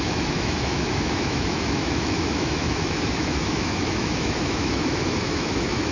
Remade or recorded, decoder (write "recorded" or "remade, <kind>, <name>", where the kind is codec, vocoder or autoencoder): remade, autoencoder, DAC-VAE